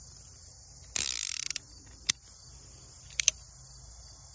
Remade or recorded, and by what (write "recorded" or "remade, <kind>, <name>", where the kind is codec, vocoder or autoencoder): recorded